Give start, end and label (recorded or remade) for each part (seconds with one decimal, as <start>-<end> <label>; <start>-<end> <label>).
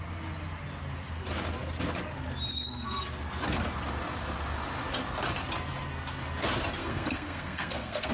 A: 0.0-2.5 recorded; 2.5-3.0 remade; 3.0-6.8 recorded; 6.8-8.1 remade